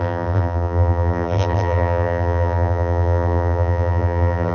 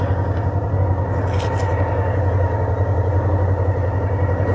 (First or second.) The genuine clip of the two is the second